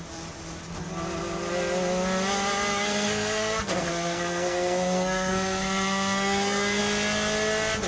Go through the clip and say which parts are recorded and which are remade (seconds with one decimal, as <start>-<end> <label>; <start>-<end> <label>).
0.0-2.7 recorded; 2.7-6.8 remade; 6.8-7.9 recorded